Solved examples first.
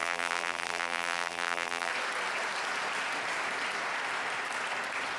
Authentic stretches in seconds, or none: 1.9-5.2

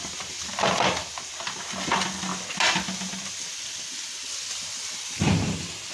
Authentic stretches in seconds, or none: 0.0-2.3